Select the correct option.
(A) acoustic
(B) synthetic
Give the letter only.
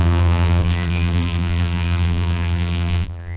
B